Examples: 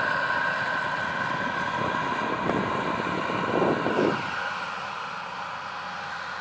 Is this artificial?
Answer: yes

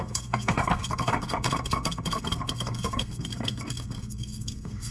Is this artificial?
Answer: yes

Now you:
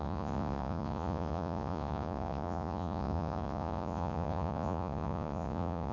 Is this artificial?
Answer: yes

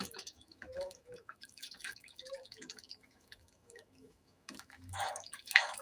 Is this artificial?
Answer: yes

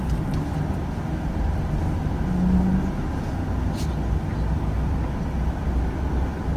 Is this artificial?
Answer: no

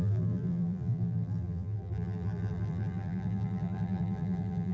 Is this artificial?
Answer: yes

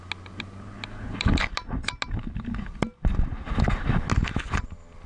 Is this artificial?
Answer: no